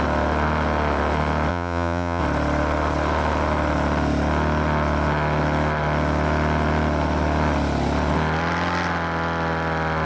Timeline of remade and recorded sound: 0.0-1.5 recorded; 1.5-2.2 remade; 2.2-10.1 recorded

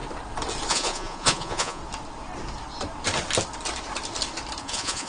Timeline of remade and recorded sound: 0.0-0.7 recorded; 0.7-1.8 remade; 1.8-4.6 recorded; 4.6-5.1 remade

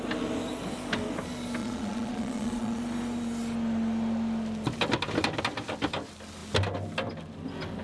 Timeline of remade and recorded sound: 0.0-1.6 recorded; 1.6-2.8 remade; 2.8-7.8 recorded

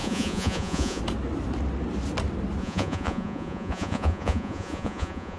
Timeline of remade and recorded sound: 0.0-1.0 remade; 1.0-2.6 recorded; 2.6-5.4 remade

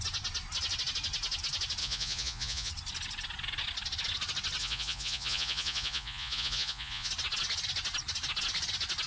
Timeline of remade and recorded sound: 0.0-1.8 recorded; 1.8-2.7 remade; 2.7-4.6 recorded; 4.6-7.1 remade; 7.1-9.1 recorded

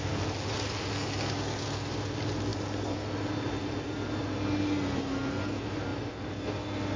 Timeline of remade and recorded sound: 0.0-7.0 recorded